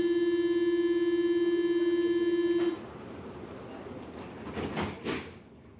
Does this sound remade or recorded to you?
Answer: recorded